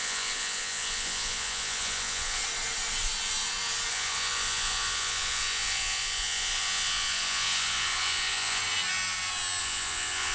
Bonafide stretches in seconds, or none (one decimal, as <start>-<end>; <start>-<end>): 2.4-3.9; 8.6-9.6